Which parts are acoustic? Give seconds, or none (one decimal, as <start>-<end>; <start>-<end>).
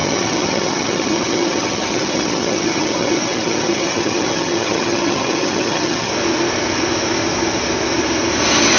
6.1-8.8